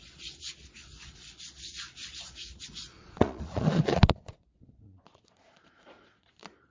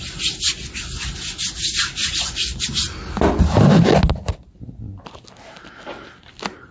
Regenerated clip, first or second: first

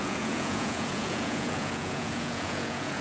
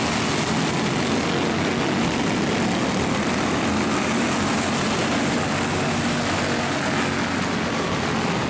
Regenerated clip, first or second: first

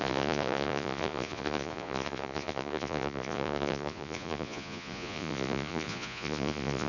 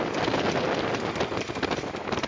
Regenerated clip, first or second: first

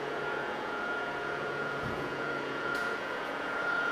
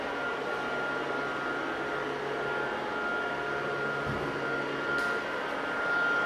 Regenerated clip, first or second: first